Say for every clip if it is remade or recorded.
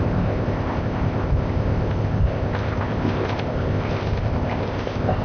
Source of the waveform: remade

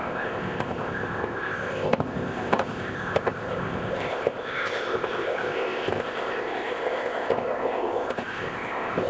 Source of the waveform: remade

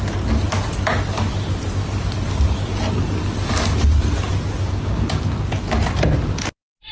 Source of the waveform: recorded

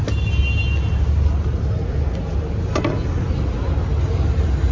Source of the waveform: recorded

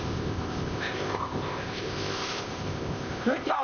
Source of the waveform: remade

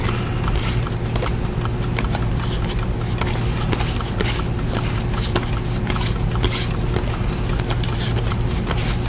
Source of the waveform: recorded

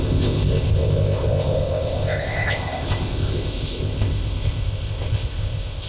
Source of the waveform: remade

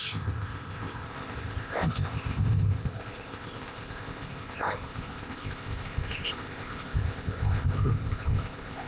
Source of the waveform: remade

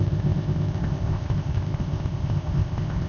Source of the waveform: remade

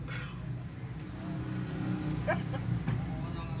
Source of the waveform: recorded